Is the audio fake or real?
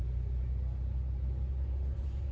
real